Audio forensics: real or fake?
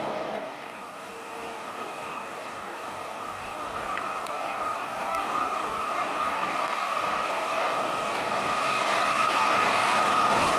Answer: fake